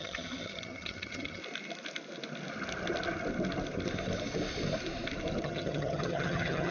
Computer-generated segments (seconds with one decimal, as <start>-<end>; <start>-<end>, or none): 0.0-1.4; 5.4-6.7